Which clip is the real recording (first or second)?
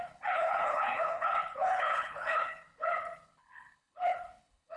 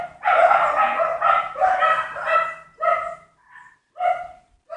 second